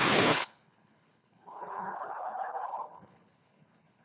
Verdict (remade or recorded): remade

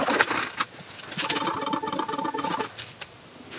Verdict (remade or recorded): recorded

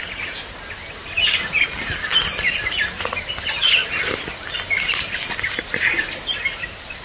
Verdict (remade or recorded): recorded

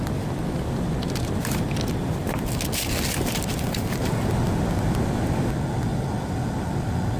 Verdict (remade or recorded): recorded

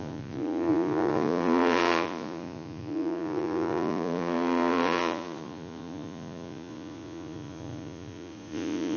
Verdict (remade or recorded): remade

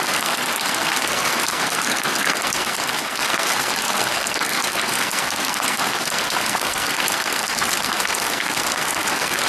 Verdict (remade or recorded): remade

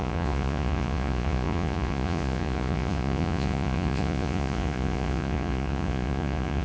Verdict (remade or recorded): remade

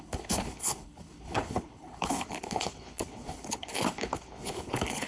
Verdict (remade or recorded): remade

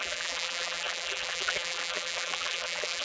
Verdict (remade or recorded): remade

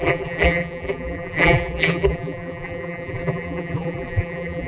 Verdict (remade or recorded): remade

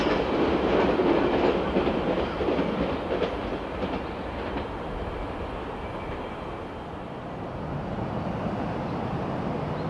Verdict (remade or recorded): recorded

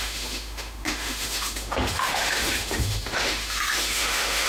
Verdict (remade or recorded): remade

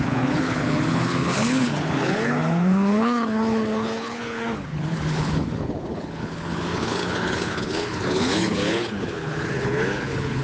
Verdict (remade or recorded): remade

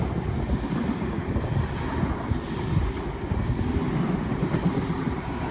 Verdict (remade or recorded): recorded